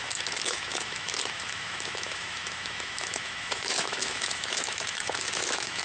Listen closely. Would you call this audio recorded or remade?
remade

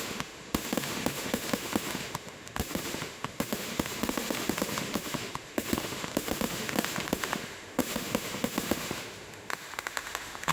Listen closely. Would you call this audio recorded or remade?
remade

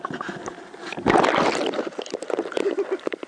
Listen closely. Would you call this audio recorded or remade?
recorded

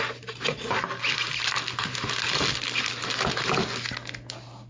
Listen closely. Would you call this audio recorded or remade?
recorded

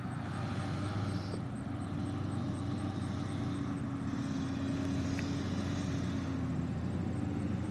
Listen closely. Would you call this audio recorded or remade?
recorded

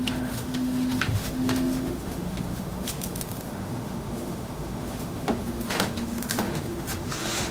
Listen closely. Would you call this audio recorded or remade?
remade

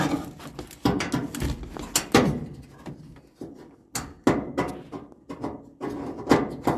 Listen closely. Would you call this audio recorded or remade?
recorded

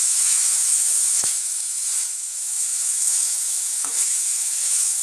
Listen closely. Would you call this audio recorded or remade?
remade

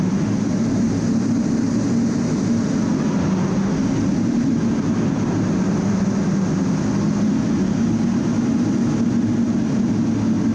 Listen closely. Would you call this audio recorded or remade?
recorded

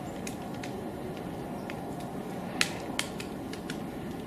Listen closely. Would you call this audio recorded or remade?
recorded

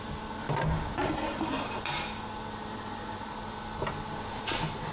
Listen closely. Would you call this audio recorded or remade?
recorded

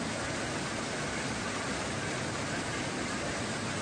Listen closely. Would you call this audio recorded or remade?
recorded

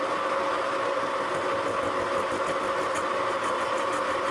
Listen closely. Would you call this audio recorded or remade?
recorded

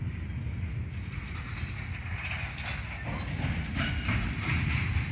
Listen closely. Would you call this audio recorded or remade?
recorded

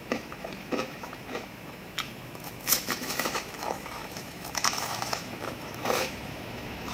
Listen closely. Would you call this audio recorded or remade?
remade